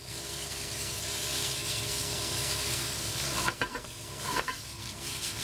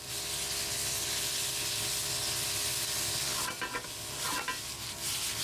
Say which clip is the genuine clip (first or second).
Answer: second